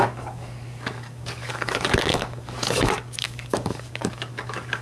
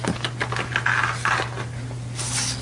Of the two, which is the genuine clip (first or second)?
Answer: second